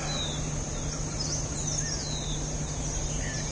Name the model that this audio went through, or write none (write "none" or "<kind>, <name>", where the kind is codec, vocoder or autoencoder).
none